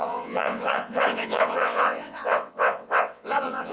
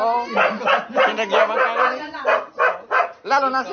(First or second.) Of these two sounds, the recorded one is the second